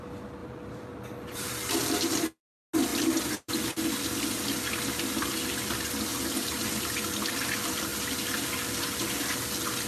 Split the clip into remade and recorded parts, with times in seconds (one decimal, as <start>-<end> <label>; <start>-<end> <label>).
0.0-0.4 recorded; 0.4-1.5 remade; 1.5-2.9 recorded; 2.9-3.5 remade; 3.5-6.1 recorded; 6.1-7.0 remade; 7.0-9.9 recorded